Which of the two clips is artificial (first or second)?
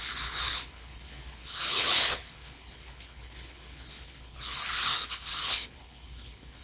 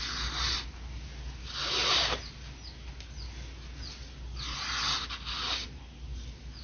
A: first